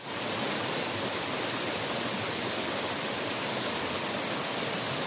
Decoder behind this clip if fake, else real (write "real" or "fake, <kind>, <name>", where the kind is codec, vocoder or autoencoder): real